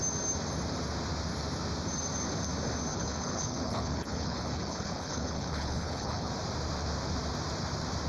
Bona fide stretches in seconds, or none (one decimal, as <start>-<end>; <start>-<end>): 0.0-2.9; 6.3-8.1